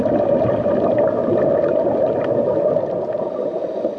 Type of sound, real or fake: real